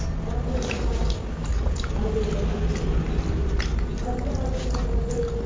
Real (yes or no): yes